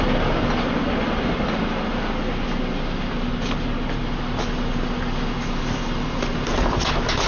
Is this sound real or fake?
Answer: real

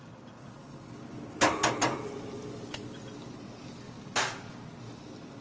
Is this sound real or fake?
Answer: real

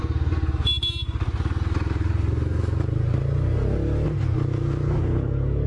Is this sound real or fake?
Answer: real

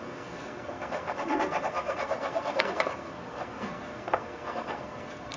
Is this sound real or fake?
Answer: fake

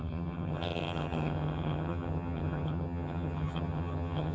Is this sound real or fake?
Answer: fake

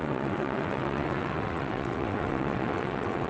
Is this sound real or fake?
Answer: fake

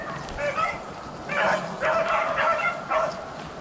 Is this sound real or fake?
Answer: real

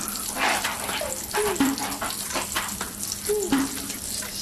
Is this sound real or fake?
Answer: real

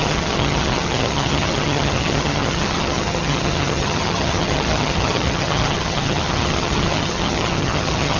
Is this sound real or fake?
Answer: fake